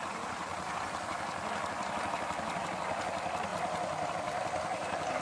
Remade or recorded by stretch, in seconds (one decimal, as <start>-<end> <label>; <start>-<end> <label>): 0.0-5.2 remade